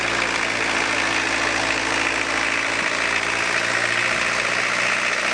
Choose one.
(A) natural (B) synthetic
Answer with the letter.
A